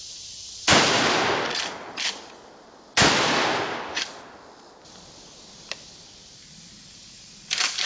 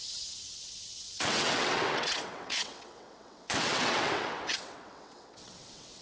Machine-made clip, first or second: second